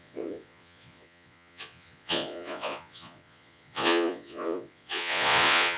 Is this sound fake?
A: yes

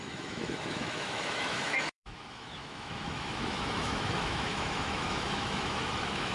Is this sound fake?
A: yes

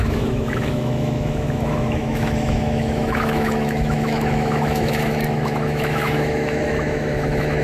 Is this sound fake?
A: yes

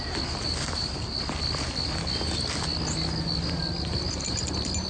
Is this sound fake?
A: no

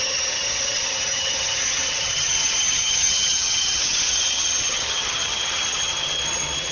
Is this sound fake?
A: yes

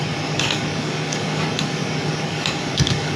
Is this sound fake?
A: yes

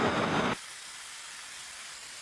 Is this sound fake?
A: no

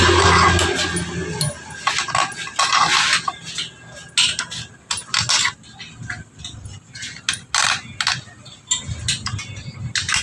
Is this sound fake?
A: no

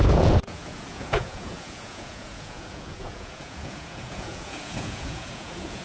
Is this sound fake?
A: yes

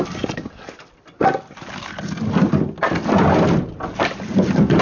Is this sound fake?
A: no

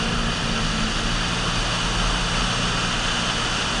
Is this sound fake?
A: no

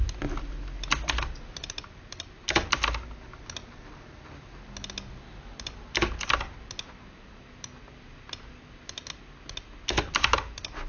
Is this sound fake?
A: no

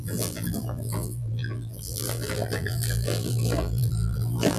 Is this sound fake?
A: yes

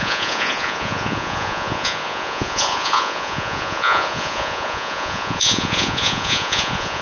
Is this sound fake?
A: yes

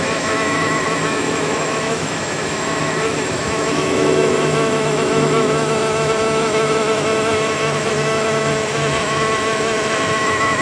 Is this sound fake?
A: yes